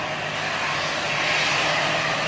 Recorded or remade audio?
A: recorded